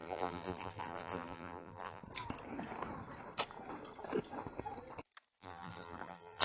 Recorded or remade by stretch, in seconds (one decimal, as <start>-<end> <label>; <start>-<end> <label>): 0.0-2.0 remade; 2.0-5.4 recorded; 5.4-6.4 remade